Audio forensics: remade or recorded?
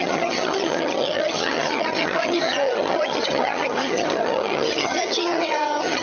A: remade